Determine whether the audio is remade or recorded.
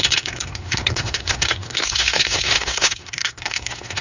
remade